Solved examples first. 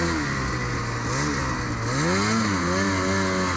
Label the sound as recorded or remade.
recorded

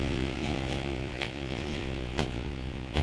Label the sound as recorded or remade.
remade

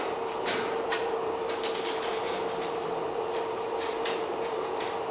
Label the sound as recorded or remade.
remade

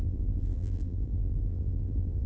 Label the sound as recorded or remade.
remade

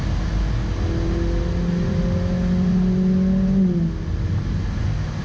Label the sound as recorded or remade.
recorded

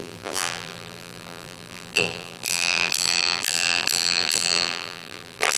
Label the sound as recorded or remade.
remade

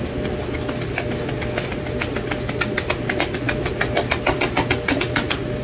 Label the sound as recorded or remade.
recorded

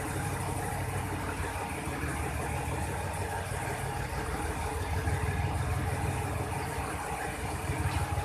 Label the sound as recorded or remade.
recorded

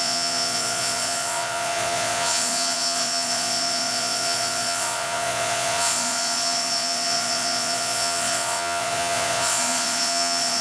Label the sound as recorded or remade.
remade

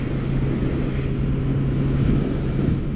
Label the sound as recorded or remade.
recorded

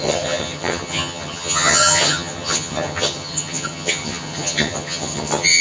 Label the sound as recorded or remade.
remade